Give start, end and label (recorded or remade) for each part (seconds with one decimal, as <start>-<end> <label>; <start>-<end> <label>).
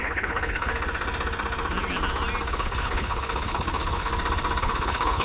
0.0-0.7 remade; 0.7-2.5 recorded; 2.5-4.1 remade; 4.1-4.6 recorded; 4.6-5.2 remade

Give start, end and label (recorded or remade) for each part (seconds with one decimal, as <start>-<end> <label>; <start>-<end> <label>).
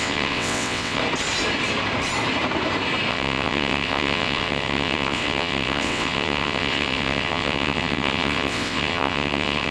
0.0-1.0 remade; 1.0-3.1 recorded; 3.1-9.7 remade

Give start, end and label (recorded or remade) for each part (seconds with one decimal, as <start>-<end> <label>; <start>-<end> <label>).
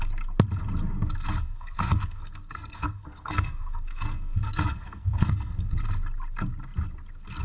0.0-1.4 recorded; 1.4-5.8 remade; 5.8-7.4 recorded